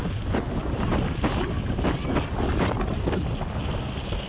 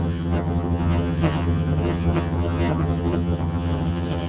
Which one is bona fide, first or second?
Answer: first